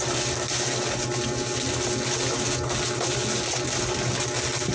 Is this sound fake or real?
real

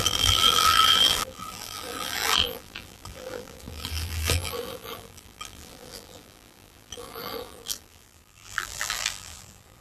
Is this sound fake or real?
fake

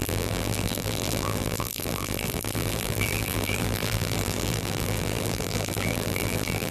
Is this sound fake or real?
fake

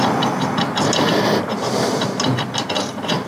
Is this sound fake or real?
real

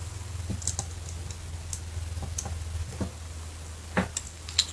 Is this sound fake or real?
real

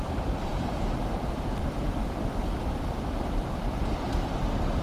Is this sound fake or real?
fake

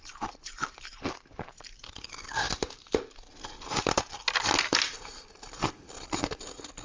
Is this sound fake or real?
real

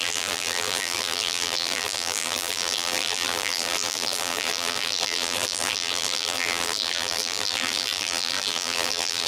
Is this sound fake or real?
fake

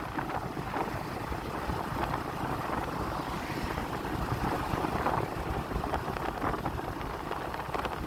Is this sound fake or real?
fake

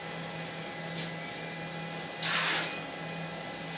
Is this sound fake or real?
real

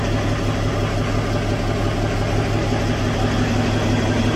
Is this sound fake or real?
real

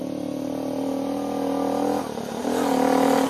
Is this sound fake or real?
real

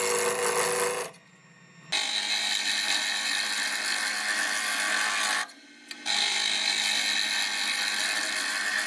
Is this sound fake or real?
real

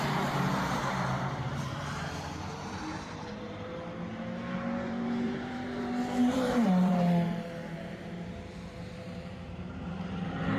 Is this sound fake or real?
fake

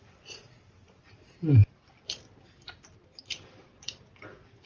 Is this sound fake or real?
real